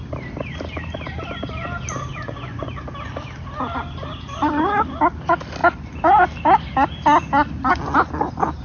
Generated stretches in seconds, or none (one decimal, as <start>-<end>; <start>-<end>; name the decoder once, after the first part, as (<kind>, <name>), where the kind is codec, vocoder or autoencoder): 2.1-2.8 (vocoder, Vocos)